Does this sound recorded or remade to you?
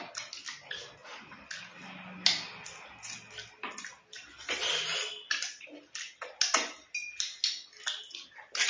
recorded